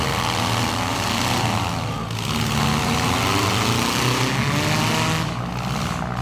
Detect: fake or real real